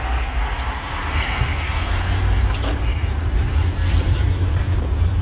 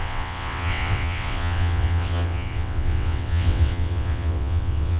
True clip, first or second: first